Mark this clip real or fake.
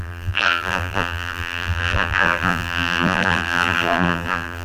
fake